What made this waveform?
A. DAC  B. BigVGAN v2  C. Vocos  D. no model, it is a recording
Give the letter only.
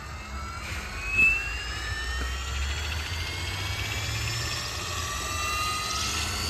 D